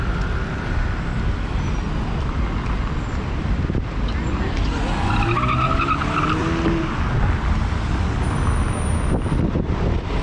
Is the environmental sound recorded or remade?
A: recorded